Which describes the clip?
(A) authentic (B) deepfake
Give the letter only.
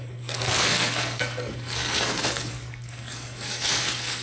B